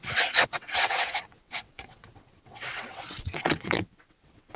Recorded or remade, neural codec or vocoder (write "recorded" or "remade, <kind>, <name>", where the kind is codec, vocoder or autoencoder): remade, vocoder, WaveNeXt